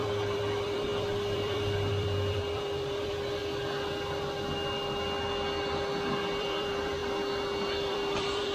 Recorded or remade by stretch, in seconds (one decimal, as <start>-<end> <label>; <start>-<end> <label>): 0.0-3.4 remade; 3.4-6.4 recorded; 6.4-7.0 remade; 7.0-7.9 recorded; 7.9-8.5 remade